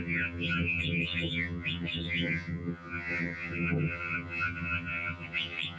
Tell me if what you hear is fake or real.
fake